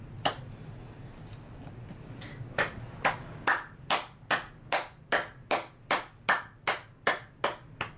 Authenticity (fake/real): real